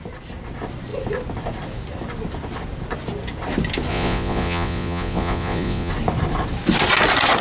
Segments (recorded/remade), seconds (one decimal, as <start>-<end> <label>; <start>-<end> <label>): 0.0-3.9 recorded; 3.9-5.9 remade; 5.9-7.4 recorded